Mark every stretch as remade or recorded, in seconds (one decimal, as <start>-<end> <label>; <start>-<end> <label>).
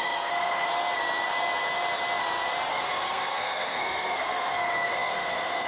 0.0-0.7 remade; 0.7-2.7 recorded; 2.7-5.7 remade